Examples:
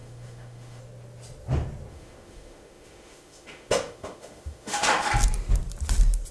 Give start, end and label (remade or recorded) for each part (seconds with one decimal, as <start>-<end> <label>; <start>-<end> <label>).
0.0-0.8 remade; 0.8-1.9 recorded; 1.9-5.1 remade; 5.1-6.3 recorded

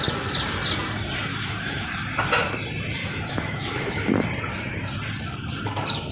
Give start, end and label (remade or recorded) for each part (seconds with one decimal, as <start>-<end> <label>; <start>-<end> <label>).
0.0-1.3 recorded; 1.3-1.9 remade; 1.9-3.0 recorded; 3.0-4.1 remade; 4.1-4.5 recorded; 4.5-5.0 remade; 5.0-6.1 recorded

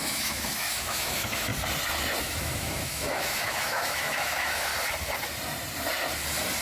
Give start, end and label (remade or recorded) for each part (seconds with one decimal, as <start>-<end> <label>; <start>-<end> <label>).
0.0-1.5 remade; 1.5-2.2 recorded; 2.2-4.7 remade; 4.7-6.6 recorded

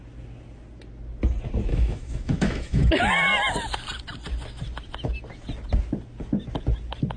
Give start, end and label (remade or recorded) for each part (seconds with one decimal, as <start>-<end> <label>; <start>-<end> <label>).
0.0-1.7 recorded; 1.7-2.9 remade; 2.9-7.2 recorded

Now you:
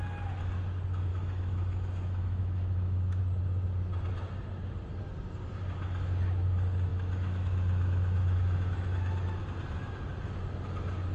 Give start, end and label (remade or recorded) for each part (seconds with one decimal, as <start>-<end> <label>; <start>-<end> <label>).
0.0-1.1 recorded; 1.1-3.2 remade; 3.2-6.9 recorded; 6.9-9.4 remade; 9.4-11.1 recorded

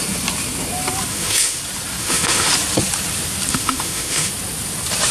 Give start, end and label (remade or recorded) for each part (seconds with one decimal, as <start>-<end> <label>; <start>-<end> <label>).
0.0-1.1 recorded; 1.1-1.6 remade; 1.6-2.0 recorded; 2.0-2.5 remade; 2.5-3.5 recorded; 3.5-4.3 remade; 4.3-5.1 recorded

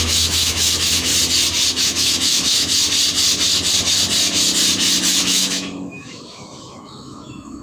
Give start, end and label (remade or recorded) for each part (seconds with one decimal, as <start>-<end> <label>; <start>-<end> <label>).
0.0-1.1 remade; 1.1-1.7 recorded; 1.7-2.7 remade; 2.7-5.2 recorded; 5.2-7.6 remade

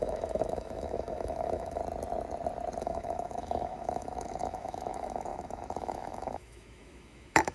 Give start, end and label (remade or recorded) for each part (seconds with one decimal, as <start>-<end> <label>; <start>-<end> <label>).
0.0-1.8 remade; 1.8-2.8 recorded; 2.8-7.5 remade